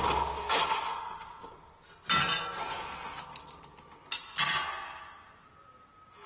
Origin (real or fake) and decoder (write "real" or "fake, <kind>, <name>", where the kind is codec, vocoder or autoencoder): real